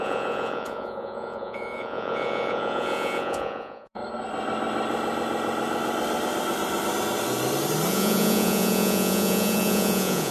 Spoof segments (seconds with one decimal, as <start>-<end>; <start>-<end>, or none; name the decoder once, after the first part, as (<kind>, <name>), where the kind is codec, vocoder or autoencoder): 0.0-4.0 (vocoder, Vocos); 7.9-10.3